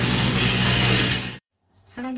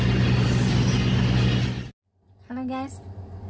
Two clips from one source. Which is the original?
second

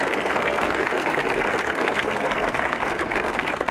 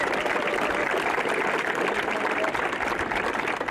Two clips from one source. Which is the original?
second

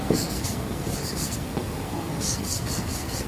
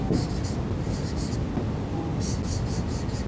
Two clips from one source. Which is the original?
second